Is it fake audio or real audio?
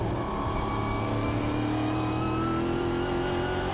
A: real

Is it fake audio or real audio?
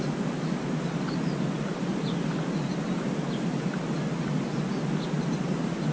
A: real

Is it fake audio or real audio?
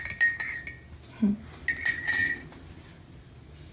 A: real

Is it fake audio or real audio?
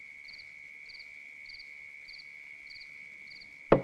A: real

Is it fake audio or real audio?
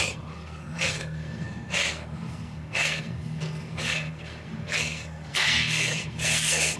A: fake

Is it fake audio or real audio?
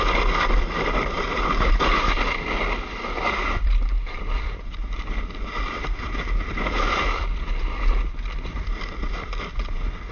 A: real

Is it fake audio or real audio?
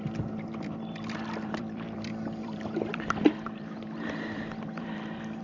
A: fake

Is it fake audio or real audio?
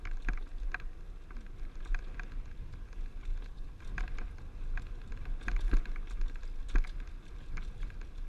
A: real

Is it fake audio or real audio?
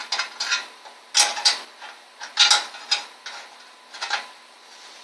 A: real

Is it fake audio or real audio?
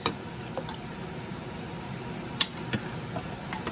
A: real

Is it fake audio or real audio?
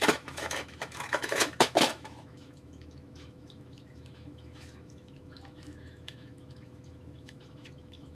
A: fake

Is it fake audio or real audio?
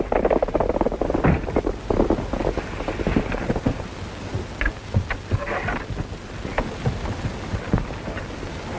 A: real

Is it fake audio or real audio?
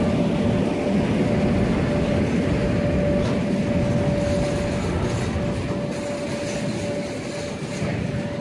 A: real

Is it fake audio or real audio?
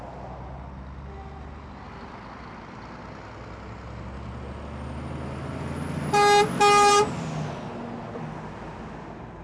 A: real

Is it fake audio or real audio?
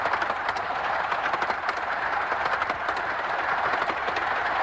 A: real